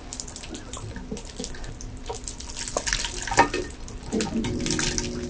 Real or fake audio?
real